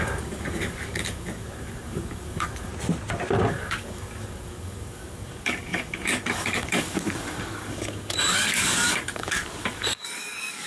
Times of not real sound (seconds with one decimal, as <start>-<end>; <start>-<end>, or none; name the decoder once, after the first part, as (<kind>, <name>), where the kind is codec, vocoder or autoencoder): 0.0-2.7 (codec, DAC); 3.5-10.7